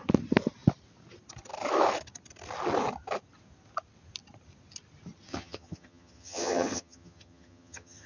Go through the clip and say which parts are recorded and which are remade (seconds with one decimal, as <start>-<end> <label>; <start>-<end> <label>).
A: 0.0-5.3 recorded; 5.3-8.1 remade